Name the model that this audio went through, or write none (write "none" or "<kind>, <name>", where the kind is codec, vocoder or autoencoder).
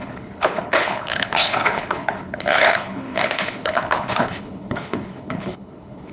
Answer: codec, HILCodec